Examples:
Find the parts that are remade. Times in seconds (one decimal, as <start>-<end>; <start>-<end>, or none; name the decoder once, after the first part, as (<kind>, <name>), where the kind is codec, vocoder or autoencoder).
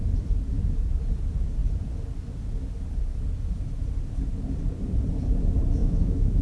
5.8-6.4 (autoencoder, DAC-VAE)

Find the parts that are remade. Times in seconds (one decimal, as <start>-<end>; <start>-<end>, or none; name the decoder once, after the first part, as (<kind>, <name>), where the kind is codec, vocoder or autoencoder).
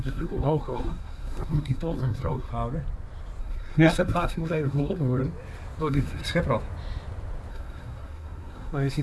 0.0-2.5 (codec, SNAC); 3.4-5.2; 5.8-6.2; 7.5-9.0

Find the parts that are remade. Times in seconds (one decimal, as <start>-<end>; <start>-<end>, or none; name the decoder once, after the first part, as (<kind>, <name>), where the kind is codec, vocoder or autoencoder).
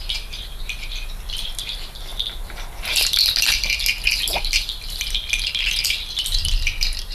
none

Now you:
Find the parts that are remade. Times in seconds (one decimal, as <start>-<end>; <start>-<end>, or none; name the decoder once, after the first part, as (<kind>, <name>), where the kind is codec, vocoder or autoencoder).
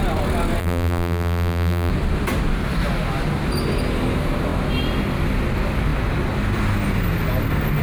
0.6-1.9 (vocoder, BigVGAN v2)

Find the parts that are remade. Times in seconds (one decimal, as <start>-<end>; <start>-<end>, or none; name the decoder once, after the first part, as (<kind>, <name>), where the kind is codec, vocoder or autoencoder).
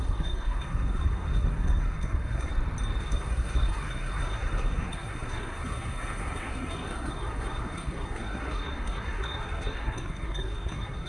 0.0-2.5 (codec, SNAC); 3.0-11.1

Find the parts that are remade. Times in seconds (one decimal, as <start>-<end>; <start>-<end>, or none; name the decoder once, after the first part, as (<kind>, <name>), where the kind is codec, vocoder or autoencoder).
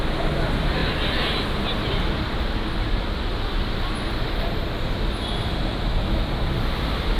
0.0-0.8 (vocoder, BigVGAN v2); 2.8-7.2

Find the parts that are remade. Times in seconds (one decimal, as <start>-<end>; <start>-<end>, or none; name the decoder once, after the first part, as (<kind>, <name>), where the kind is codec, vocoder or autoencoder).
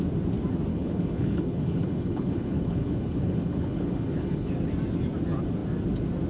0.7-4.5 (codec, HILCodec)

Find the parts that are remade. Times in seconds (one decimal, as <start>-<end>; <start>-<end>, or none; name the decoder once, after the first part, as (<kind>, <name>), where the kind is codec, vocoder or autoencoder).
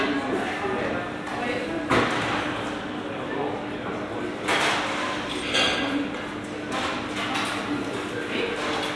none